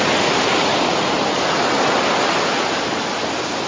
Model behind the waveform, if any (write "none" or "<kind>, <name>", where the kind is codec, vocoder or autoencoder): none